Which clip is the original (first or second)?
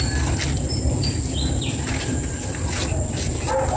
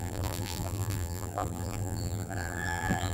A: first